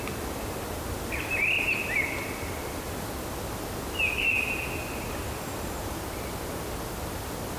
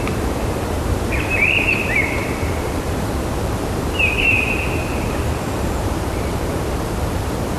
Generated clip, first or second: second